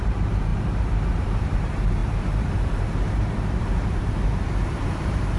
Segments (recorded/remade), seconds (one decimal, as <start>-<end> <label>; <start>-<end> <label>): 0.0-0.5 remade; 0.5-1.2 recorded; 1.2-5.4 remade